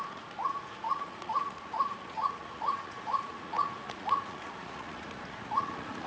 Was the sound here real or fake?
fake